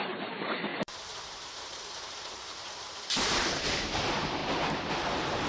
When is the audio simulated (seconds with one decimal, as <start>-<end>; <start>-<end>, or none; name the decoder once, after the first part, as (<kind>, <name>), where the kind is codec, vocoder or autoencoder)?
0.0-4.4 (vocoder, BigVGAN v2); 4.9-5.5